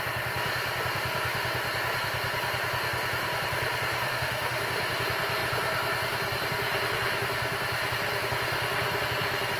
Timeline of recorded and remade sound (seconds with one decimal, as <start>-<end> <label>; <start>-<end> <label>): 0.0-3.9 recorded; 3.9-4.6 remade; 4.6-9.6 recorded